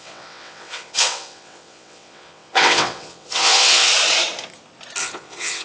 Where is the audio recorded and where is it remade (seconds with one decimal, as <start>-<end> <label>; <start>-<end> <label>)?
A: 0.0-3.9 remade; 3.9-5.0 recorded; 5.0-5.6 remade